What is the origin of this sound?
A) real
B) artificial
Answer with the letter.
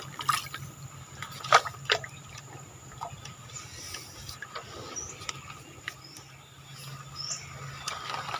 A